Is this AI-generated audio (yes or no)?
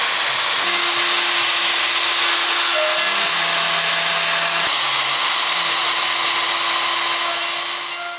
no